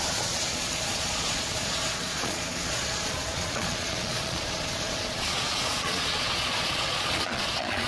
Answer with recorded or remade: remade